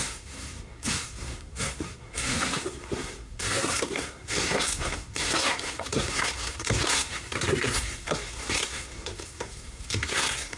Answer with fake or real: fake